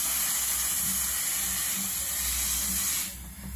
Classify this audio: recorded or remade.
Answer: recorded